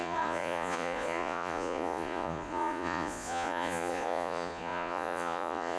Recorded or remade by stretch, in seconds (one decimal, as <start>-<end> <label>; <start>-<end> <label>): 0.0-5.8 remade